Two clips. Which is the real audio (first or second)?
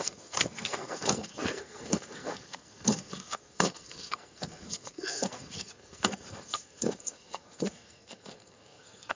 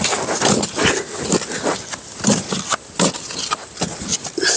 second